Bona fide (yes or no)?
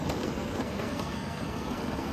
no